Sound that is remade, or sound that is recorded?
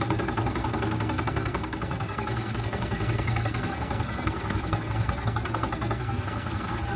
remade